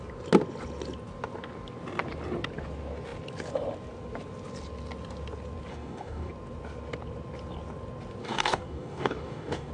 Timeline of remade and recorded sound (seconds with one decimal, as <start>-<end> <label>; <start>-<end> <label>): 0.0-5.7 recorded; 5.7-6.3 remade; 6.3-8.2 recorded; 8.2-9.7 remade